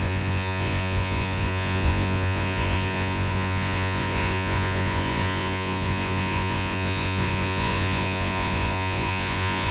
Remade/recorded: remade